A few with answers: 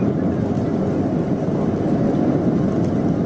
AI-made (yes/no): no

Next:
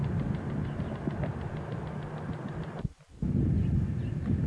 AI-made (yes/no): no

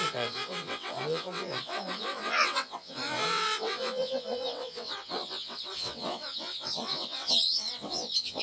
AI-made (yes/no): yes